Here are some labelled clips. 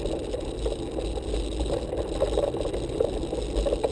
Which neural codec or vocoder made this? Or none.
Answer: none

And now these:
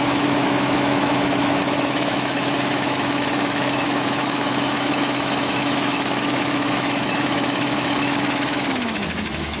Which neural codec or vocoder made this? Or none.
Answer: autoencoder, DAC-VAE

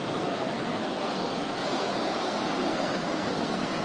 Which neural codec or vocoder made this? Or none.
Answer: codec, SNAC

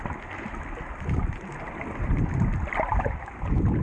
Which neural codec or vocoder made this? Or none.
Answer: none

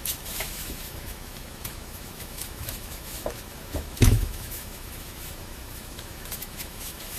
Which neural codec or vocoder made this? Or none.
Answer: autoencoder, DAC-VAE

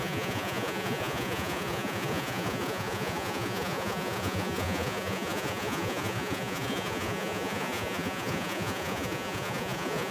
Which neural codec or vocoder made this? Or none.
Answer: vocoder, Vocos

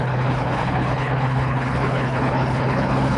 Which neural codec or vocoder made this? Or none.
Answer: codec, HILCodec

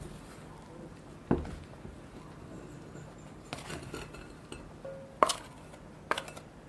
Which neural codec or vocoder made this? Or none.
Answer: none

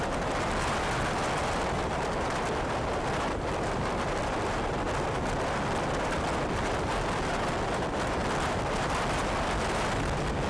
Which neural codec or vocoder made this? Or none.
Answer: none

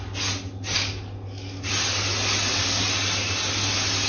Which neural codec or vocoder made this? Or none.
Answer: none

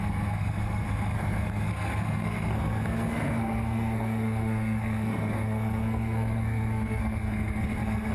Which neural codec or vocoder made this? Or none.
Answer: codec, SNAC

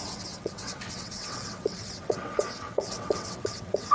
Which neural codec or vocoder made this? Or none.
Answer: vocoder, WaveNeXt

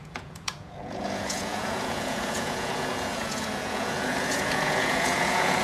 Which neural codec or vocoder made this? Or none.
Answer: vocoder, Vocos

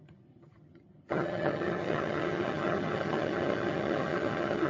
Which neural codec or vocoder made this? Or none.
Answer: vocoder, HiFi-GAN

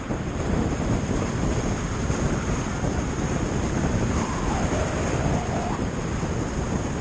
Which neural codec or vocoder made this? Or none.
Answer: none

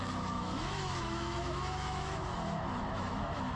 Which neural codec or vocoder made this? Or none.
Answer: autoencoder, DAC-VAE